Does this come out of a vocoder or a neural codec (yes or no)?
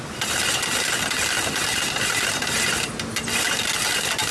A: no